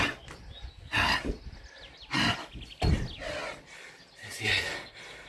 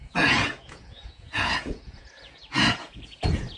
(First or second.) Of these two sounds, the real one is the first